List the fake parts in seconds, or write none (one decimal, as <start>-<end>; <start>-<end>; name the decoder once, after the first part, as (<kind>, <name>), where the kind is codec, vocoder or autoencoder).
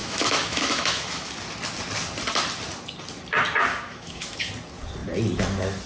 0.0-1.3 (autoencoder, DAC-VAE); 3.7-4.5